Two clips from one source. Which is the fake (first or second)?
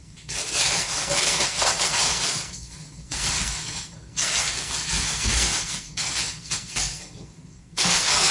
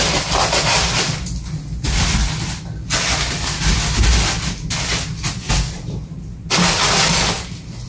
first